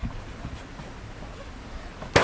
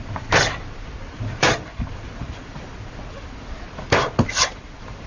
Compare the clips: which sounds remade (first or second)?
second